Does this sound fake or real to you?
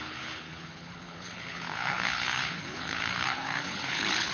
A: fake